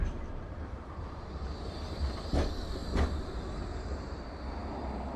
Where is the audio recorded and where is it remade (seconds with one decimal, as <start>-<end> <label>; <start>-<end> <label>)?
0.0-1.0 remade; 1.0-5.2 recorded